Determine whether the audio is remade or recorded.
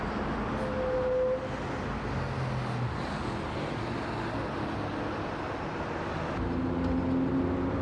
recorded